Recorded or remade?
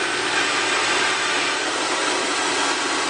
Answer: remade